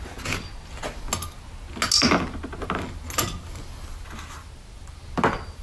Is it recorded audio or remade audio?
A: recorded